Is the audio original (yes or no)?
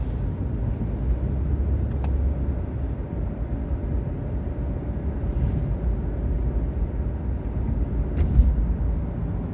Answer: yes